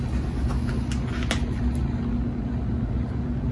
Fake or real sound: real